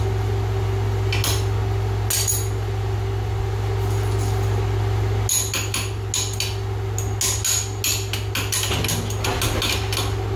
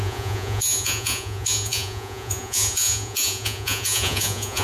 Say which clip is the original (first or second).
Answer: first